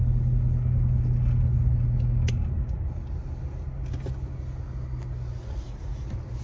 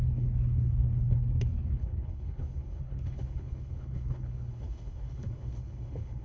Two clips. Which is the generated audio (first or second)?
second